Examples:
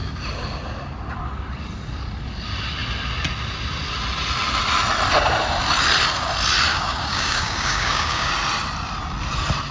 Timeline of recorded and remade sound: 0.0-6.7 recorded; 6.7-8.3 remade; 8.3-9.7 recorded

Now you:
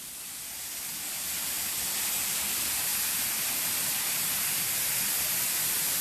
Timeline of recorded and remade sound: 0.0-6.0 recorded

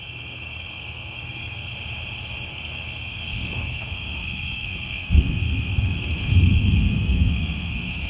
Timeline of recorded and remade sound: 0.0-1.7 remade; 1.7-2.5 recorded; 2.5-8.1 remade

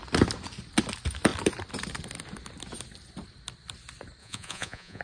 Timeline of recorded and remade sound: 0.0-4.2 recorded; 4.2-5.0 remade